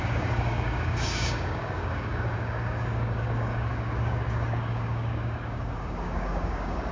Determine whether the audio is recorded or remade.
remade